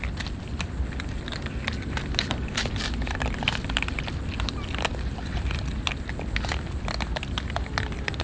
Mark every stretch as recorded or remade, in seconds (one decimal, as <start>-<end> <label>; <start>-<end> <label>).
0.0-8.2 recorded

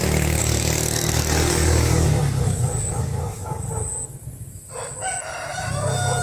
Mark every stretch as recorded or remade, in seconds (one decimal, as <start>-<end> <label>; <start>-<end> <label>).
0.0-0.4 recorded; 0.4-3.7 remade; 3.7-6.2 recorded

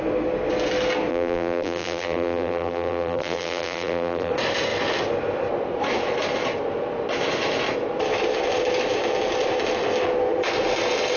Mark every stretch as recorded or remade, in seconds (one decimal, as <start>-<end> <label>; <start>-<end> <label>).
0.0-1.1 recorded; 1.1-4.3 remade; 4.3-11.2 recorded

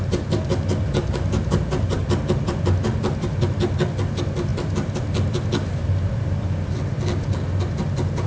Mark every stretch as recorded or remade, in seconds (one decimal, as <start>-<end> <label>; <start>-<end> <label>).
0.0-8.3 recorded

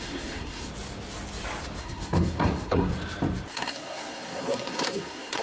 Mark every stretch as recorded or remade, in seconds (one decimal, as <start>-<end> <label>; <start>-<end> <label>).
0.0-0.7 remade; 0.7-1.8 recorded; 1.8-2.9 remade; 2.9-3.5 recorded; 3.5-5.4 remade